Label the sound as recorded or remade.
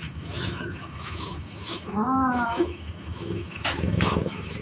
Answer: remade